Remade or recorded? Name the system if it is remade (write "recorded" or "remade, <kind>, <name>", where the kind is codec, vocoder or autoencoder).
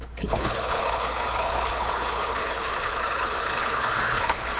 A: remade, codec, HILCodec